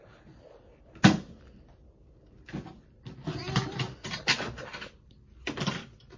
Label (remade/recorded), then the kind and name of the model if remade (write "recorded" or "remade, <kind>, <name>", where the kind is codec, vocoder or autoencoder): recorded